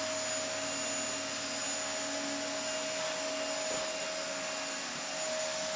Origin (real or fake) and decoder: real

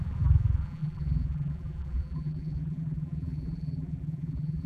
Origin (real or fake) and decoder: fake, vocoder, BigVGAN v2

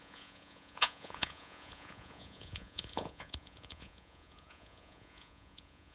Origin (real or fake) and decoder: fake, vocoder, Vocos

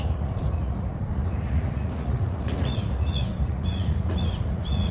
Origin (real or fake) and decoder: fake, vocoder, Vocos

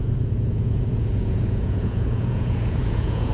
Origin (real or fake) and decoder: fake, vocoder, Vocos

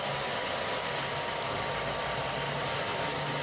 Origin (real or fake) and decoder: real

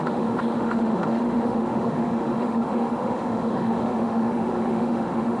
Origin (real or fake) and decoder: fake, autoencoder, DAC-VAE